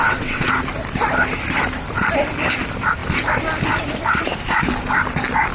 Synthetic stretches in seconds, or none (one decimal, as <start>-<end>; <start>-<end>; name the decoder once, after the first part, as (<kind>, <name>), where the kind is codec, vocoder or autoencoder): 0.0-0.5 (vocoder, WaveNeXt)